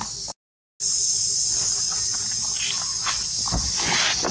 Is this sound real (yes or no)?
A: yes